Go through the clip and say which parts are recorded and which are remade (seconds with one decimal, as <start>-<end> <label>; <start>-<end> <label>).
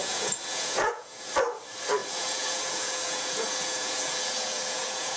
0.0-1.3 remade; 1.3-2.0 recorded; 2.0-5.2 remade